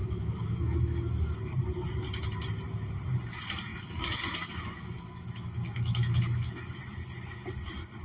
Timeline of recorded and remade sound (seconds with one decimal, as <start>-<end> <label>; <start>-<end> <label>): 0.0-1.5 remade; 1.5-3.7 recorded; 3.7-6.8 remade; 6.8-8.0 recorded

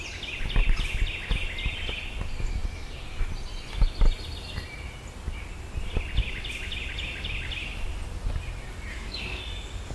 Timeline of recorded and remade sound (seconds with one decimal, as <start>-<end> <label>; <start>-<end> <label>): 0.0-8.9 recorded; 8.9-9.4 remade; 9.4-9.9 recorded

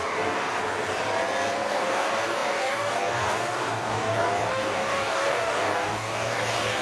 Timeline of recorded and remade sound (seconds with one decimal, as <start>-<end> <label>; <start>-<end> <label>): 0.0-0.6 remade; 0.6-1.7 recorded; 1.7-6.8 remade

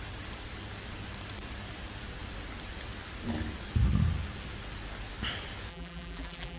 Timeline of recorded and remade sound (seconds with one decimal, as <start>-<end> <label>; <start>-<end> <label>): 0.0-5.7 recorded; 5.7-6.6 remade

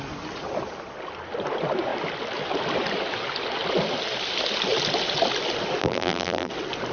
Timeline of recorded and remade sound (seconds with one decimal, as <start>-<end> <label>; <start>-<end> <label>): 0.0-5.8 recorded; 5.8-6.5 remade; 6.5-6.9 recorded